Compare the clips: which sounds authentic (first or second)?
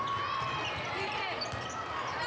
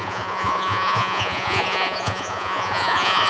first